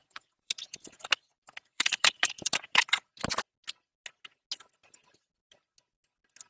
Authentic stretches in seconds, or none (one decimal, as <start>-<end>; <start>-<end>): 3.1-6.5

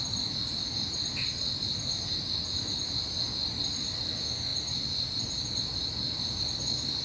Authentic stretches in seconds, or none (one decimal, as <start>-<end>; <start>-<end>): 0.0-7.0

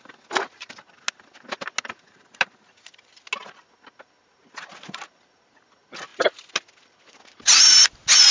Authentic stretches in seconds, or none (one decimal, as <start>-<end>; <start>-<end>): 0.0-8.3

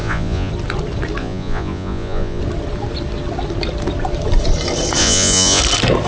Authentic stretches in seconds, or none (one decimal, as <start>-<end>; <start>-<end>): 0.5-1.2; 2.4-5.0; 5.6-6.1

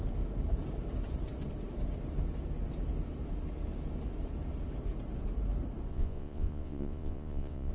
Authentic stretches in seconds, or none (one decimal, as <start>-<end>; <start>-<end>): 0.0-5.9

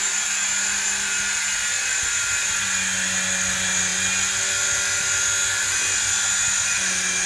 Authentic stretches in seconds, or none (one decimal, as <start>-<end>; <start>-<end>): 0.0-7.3